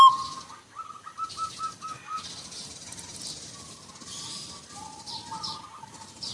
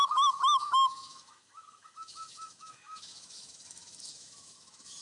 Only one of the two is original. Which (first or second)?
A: first